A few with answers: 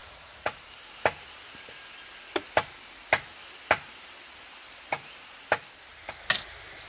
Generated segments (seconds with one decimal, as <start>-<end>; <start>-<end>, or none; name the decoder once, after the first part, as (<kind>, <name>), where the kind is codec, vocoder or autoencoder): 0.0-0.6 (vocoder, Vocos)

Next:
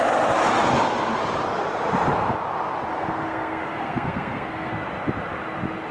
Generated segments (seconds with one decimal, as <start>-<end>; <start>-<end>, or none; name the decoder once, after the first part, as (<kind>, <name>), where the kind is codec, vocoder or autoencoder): 2.9-4.7 (codec, SNAC)

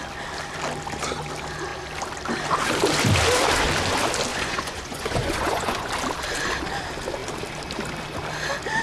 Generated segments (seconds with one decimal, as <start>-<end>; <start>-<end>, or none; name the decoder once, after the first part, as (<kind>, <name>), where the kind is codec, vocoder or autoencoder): 4.3-5.9 (vocoder, Vocos)

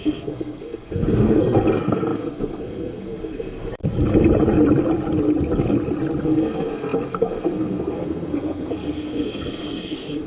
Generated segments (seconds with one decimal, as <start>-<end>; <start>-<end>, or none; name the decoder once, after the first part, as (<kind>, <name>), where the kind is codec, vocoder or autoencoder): 0.0-3.8 (codec, SNAC); 6.2-10.3

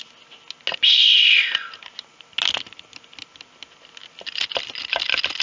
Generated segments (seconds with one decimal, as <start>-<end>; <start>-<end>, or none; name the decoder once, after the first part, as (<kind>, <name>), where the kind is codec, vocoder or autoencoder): none

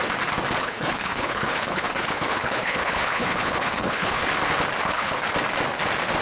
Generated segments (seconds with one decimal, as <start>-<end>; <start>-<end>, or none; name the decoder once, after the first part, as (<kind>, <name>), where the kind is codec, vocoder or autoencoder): 0.6-4.3 (codec, HILCodec); 4.8-5.3

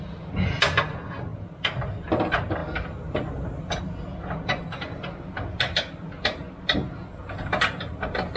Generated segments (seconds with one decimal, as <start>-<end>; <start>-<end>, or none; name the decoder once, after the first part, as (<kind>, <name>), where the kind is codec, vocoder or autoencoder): none

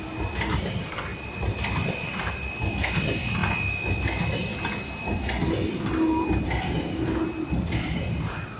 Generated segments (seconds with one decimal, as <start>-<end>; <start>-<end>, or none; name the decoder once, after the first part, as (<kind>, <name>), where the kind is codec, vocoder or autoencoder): none